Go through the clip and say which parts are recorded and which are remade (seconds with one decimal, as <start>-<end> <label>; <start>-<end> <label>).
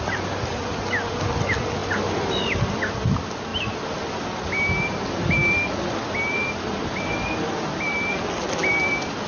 0.0-9.3 recorded